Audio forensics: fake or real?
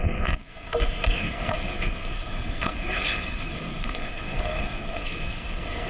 fake